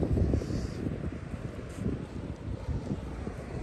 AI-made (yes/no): no